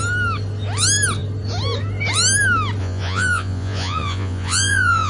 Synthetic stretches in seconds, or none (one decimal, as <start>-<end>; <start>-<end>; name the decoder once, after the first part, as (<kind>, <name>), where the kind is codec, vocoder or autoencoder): 2.8-5.1 (vocoder, Vocos)